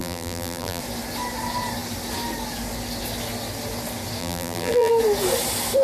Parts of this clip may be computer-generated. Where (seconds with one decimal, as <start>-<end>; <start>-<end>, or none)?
0.0-0.8; 4.2-4.9